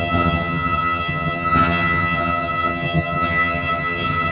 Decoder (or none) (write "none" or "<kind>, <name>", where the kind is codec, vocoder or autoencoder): vocoder, HiFi-GAN